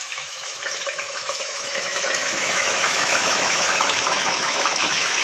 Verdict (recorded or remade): remade